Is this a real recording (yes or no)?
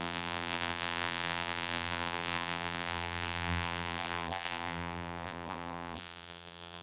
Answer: no